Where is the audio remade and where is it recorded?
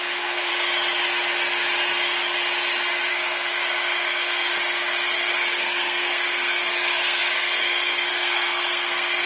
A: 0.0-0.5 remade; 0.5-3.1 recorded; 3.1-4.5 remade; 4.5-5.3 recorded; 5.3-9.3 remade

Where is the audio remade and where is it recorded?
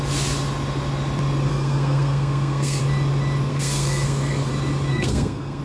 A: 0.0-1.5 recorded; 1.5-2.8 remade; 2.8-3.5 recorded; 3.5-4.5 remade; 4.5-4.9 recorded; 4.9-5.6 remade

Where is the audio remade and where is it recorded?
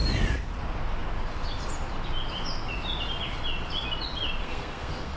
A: 0.0-4.4 recorded; 4.4-5.2 remade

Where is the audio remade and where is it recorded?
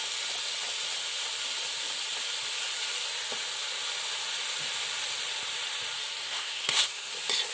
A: 0.0-6.2 recorded; 6.2-7.1 remade; 7.1-7.5 recorded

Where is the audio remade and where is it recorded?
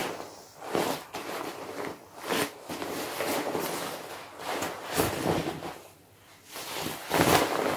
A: 0.0-7.8 recorded